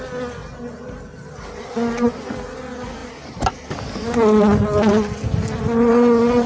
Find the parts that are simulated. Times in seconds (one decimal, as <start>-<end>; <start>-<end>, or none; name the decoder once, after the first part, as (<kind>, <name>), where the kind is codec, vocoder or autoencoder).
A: none

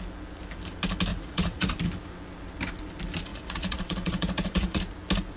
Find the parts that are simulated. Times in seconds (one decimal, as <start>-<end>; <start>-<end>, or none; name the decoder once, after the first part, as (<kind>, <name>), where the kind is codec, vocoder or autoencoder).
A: 1.1-1.7 (vocoder, Vocos); 3.3-4.8

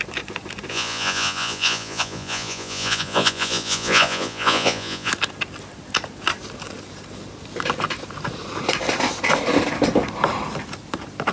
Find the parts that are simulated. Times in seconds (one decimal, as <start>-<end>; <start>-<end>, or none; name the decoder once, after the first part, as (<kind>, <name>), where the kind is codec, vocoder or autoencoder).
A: 0.7-5.1 (vocoder, Vocos)